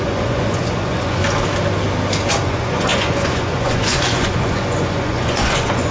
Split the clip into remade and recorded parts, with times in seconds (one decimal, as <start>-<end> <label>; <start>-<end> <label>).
0.0-1.2 remade; 1.2-2.3 recorded; 2.3-5.9 remade